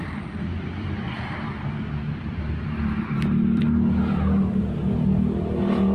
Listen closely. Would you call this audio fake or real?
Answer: fake